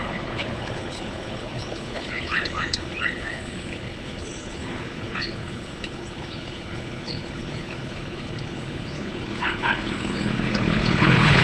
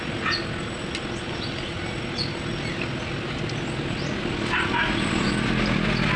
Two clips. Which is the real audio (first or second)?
second